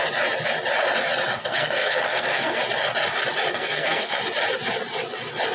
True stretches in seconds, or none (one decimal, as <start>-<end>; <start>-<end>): 0.0-1.3; 2.6-3.5; 4.2-5.5